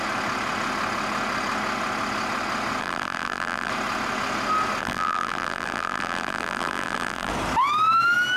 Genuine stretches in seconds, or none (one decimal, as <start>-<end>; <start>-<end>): 0.0-2.8; 3.7-4.8; 7.3-8.4